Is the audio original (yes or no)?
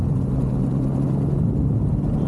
yes